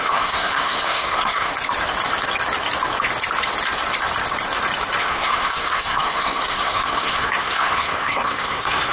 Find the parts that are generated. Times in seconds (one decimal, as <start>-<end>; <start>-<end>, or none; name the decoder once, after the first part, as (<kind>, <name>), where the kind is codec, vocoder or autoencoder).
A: 0.0-1.5 (codec, SNAC); 5.0-8.9